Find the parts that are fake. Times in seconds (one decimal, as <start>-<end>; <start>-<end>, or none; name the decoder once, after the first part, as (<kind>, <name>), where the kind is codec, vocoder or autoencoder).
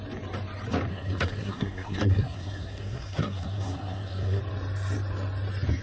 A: 0.9-4.4 (codec, SNAC)